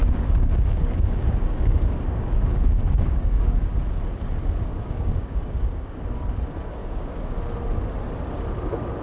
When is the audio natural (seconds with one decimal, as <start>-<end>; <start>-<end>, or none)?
3.8-4.7; 6.0-6.8; 7.4-9.0